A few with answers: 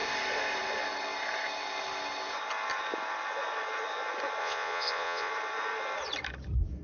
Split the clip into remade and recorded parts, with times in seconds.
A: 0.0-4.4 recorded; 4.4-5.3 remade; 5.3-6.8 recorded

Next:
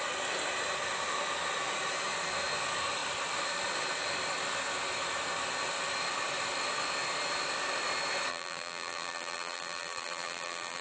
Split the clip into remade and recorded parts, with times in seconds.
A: 0.0-8.3 recorded; 8.3-10.8 remade